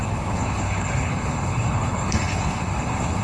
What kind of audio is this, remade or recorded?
remade